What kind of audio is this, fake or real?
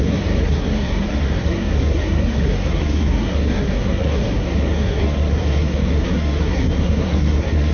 fake